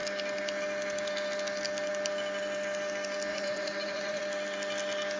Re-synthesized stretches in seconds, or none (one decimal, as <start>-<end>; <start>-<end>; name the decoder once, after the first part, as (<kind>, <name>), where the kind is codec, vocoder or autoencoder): 3.3-4.2 (vocoder, Vocos)